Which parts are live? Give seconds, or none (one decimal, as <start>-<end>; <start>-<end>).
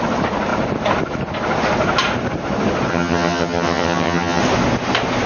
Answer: 0.0-2.9; 4.4-5.3